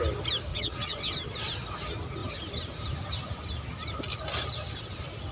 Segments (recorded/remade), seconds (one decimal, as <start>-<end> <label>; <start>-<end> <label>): 0.0-0.5 recorded; 0.5-1.1 remade; 1.1-5.3 recorded